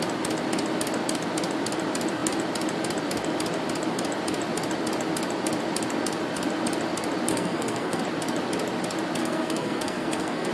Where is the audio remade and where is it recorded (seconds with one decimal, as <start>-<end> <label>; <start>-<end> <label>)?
0.0-7.3 recorded; 7.3-8.0 remade; 8.0-9.2 recorded; 9.2-10.5 remade